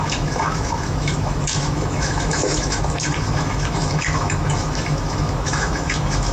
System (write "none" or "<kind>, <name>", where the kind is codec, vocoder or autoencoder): autoencoder, DAC-VAE